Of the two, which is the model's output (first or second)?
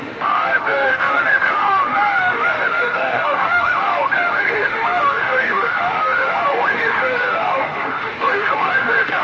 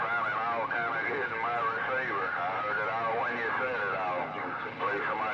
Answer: first